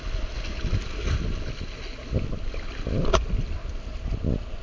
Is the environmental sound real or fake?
real